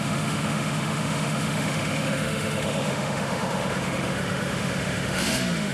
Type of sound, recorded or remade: remade